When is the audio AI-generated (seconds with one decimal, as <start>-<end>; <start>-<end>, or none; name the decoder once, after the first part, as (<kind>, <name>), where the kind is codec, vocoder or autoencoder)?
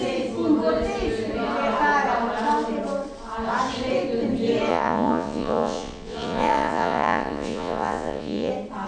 4.7-8.5 (vocoder, Vocos)